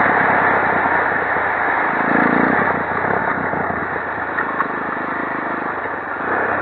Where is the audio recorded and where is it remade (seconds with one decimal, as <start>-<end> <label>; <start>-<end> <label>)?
0.0-3.2 recorded; 3.2-3.8 remade; 3.8-6.6 recorded